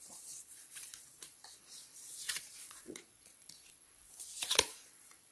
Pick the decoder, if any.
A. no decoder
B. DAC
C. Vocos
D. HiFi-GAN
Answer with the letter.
C